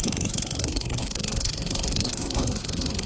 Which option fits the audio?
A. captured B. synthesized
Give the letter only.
B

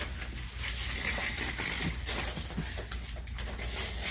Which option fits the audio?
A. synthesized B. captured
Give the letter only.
B